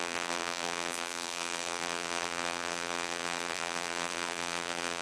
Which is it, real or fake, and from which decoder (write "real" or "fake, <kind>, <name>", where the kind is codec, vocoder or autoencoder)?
fake, vocoder, BigVGAN v2